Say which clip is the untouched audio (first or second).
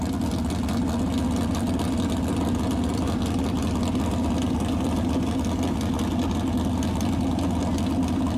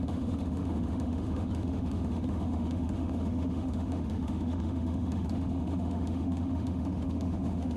first